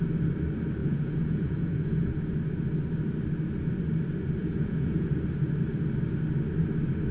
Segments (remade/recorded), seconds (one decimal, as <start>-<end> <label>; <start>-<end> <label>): 0.0-0.8 recorded; 0.8-2.3 remade; 2.3-4.4 recorded; 4.4-5.1 remade; 5.1-7.1 recorded